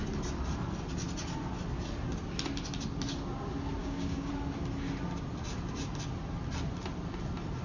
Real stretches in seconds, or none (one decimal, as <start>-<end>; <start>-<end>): 0.0-3.8; 4.3-7.6

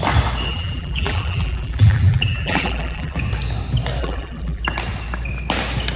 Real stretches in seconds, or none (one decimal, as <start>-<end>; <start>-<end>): 0.0-0.5; 3.2-4.0; 4.6-6.0

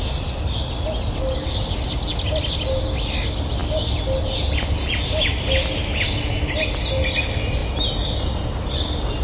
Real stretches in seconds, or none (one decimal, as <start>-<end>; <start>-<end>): 0.0-9.2